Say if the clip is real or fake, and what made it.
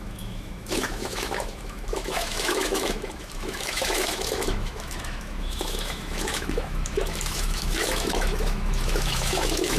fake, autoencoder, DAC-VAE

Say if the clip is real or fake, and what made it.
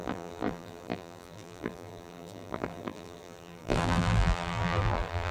fake, vocoder, BigVGAN v2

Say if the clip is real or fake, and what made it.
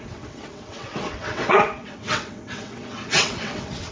fake, vocoder, WaveNeXt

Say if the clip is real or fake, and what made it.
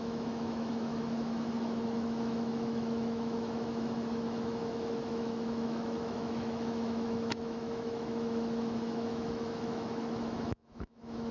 fake, autoencoder, DAC-VAE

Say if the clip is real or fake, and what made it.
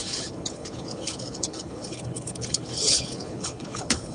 fake, codec, HILCodec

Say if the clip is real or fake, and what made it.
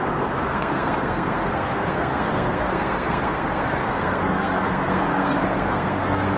fake, codec, SNAC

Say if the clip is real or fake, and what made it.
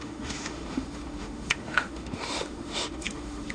fake, autoencoder, DAC-VAE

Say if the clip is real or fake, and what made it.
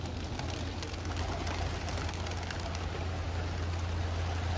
real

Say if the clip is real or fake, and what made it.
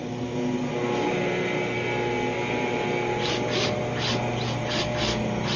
real